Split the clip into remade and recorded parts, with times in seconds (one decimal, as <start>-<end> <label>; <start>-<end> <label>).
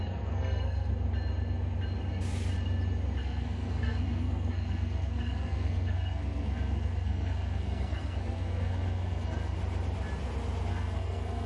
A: 0.0-0.9 remade; 0.9-3.2 recorded; 3.2-9.6 remade; 9.6-10.7 recorded; 10.7-11.5 remade